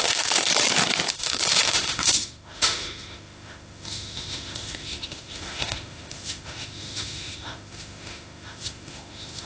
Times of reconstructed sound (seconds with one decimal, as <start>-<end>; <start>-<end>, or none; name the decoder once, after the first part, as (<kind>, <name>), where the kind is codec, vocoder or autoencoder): 0.0-0.5 (autoencoder, DAC-VAE); 1.1-9.5